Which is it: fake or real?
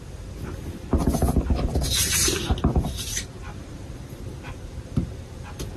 fake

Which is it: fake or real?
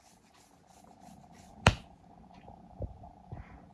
real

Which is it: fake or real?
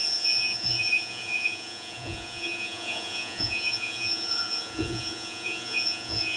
fake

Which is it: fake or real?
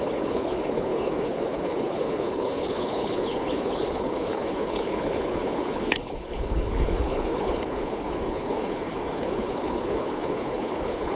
fake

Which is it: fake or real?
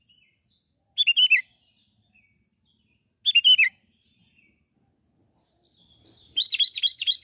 real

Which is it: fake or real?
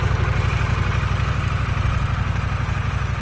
real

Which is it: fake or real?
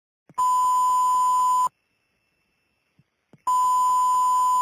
real